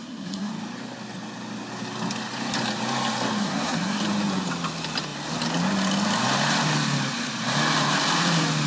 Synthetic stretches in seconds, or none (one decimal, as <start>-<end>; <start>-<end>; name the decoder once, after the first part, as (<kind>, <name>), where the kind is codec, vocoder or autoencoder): 0.0-0.5 (codec, SNAC); 3.4-4.0